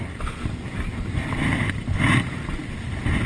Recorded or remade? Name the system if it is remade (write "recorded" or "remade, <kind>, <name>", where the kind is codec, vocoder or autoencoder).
recorded